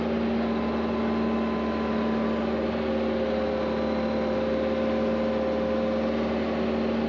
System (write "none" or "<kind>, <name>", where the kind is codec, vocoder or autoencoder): none